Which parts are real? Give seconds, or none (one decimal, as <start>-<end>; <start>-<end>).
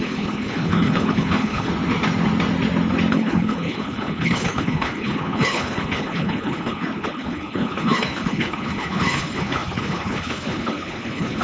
1.7-3.1